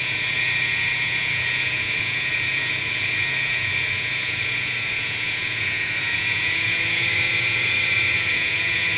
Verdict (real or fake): fake